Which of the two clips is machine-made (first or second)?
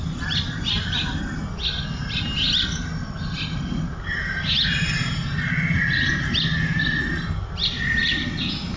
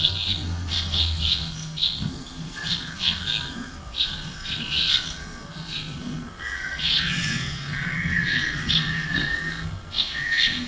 second